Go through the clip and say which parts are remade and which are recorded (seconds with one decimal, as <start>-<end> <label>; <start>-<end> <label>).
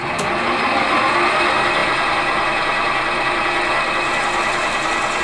0.0-5.2 recorded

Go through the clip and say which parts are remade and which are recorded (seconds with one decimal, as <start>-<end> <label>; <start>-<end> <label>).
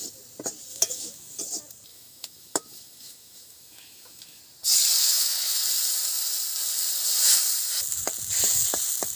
0.0-0.7 recorded; 0.7-1.4 remade; 1.4-1.9 recorded; 1.9-4.4 remade; 4.4-5.0 recorded; 5.0-5.6 remade; 5.6-9.2 recorded